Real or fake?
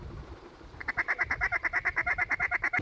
real